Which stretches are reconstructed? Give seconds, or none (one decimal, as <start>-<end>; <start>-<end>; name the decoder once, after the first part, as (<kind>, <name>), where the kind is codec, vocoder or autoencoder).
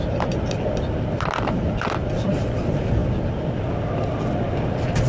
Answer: none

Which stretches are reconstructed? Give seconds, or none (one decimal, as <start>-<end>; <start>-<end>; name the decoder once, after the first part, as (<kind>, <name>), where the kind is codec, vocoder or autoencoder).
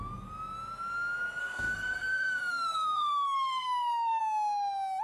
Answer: 1.4-4.2 (codec, SNAC)